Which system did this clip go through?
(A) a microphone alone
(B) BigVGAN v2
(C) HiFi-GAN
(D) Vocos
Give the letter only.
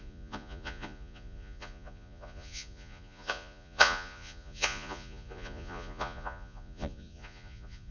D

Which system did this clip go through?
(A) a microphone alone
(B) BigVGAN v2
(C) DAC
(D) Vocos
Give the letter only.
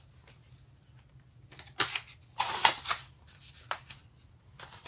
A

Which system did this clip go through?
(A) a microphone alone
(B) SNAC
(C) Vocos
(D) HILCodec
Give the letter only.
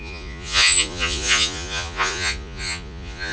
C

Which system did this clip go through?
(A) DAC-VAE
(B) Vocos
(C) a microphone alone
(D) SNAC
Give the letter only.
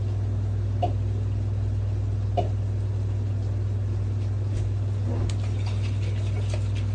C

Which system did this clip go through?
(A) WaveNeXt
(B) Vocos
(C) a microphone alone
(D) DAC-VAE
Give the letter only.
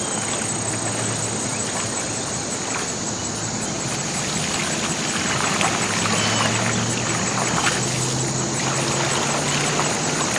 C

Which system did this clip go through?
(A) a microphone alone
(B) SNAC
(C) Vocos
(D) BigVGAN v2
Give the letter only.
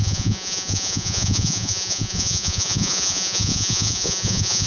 C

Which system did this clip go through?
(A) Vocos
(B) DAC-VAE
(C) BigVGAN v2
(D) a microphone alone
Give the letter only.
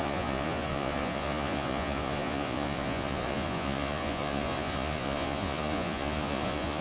A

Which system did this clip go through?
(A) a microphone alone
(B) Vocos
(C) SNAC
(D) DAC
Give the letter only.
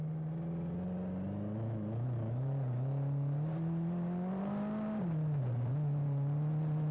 A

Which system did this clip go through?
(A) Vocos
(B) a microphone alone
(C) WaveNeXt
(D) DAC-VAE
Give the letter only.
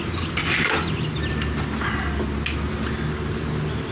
B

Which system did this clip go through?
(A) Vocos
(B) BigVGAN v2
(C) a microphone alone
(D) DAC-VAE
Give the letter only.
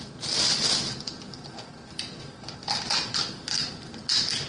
C